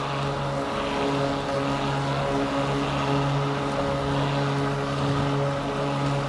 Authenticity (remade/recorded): recorded